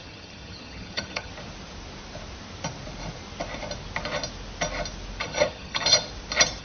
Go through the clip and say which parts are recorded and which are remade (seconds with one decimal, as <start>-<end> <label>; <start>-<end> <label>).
0.0-1.3 remade; 1.3-5.2 recorded; 5.2-5.9 remade; 5.9-6.6 recorded